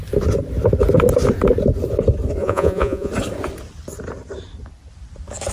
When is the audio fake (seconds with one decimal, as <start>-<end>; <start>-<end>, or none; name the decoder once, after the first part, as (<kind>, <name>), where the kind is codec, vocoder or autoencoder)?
2.4-3.1 (vocoder, Vocos)